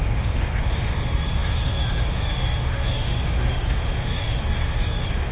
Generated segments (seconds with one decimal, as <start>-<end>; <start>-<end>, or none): 0.0-5.3